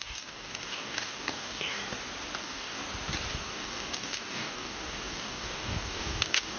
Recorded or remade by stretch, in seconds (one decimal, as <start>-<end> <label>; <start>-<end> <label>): 0.0-1.8 remade; 1.8-2.4 recorded; 2.4-2.8 remade; 2.8-3.3 recorded; 3.3-6.6 remade